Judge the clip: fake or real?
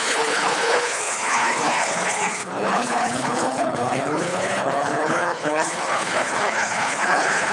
fake